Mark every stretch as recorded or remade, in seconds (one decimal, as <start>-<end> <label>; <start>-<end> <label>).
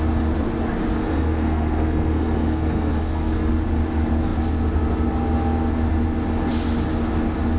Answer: 0.0-1.0 recorded; 1.0-3.5 remade; 3.5-7.6 recorded